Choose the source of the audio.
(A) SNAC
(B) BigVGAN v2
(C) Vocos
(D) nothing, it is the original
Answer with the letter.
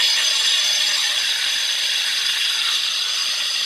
D